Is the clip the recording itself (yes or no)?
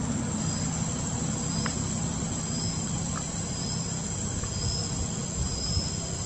yes